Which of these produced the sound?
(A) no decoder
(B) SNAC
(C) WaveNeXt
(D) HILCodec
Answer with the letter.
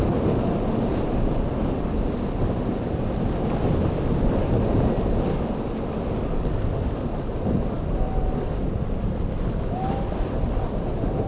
A